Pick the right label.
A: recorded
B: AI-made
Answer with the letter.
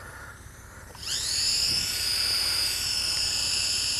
B